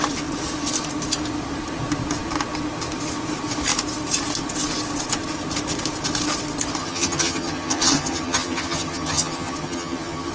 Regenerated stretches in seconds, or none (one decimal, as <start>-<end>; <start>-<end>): 6.8-10.3

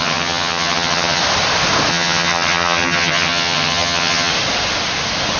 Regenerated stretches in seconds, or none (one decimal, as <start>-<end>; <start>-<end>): 0.0-1.2; 1.9-4.3

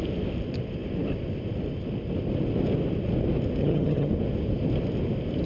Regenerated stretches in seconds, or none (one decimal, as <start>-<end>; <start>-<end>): 3.6-4.1

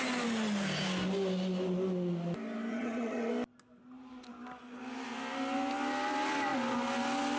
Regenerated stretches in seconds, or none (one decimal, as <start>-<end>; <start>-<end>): 2.7-3.3

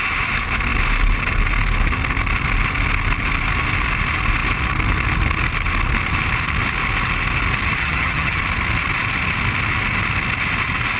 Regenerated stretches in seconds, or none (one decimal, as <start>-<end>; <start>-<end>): 7.8-8.4

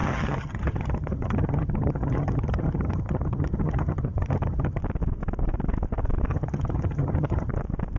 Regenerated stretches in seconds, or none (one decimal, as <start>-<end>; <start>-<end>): 0.0-4.8; 6.3-7.5

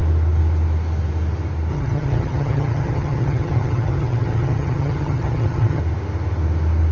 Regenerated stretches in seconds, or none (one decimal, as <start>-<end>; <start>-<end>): 1.7-5.8